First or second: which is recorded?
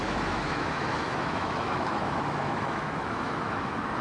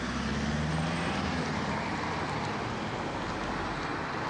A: second